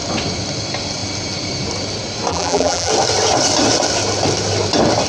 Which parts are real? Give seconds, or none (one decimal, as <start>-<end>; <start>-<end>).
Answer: 0.0-2.3; 2.9-5.1